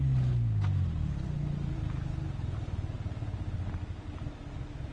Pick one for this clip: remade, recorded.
recorded